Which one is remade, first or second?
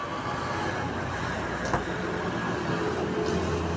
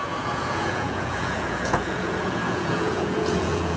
second